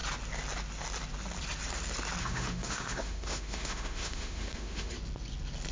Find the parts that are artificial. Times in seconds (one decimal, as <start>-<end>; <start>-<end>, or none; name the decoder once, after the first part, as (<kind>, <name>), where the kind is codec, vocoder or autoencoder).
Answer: 2.2-4.9 (autoencoder, DAC-VAE)